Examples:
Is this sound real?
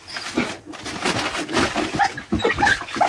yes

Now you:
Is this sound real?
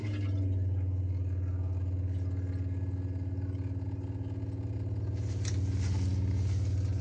yes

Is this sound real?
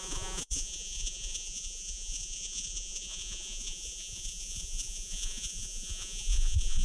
no